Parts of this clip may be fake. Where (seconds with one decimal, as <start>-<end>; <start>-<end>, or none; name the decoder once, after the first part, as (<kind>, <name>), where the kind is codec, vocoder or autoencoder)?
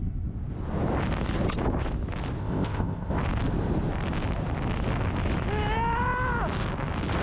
2.4-3.2 (codec, ZipCodec)